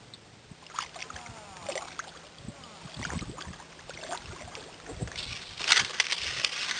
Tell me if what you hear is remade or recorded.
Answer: recorded